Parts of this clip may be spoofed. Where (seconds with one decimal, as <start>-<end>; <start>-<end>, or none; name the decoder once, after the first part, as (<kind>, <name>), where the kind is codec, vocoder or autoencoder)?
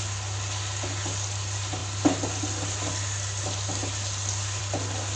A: none